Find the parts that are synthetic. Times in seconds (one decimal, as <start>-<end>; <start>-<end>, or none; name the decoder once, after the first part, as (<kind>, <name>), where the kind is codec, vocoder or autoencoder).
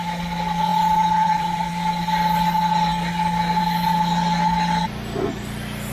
none